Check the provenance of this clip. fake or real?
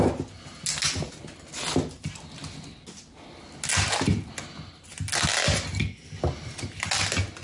real